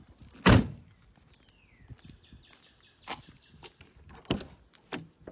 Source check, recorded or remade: recorded